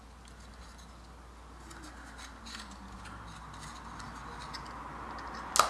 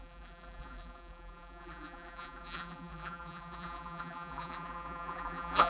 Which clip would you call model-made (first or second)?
second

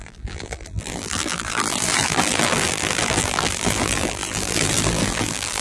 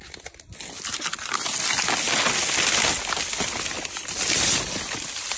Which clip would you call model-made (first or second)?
first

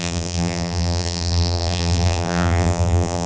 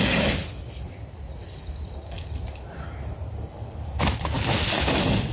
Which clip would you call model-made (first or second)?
first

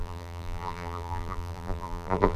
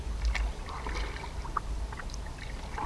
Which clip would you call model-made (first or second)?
first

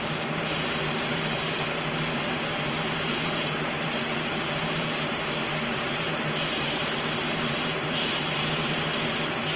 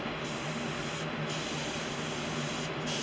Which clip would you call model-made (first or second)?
first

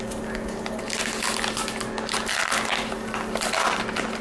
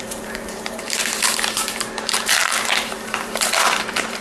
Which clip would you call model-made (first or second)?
second